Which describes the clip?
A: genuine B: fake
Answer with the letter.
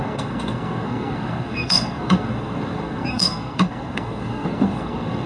B